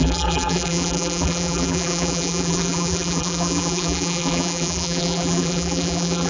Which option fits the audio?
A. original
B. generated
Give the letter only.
B